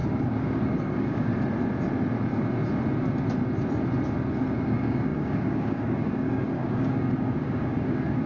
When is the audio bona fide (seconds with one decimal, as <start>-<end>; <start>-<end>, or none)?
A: 1.3-4.3